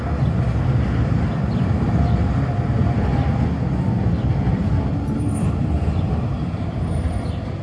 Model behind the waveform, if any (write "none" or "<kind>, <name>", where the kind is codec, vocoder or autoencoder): none